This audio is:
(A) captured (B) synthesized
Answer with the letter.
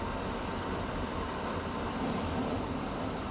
B